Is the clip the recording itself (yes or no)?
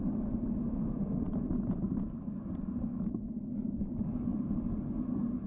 yes